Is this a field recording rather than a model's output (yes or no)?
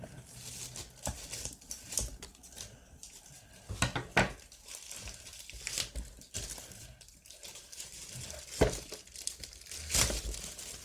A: yes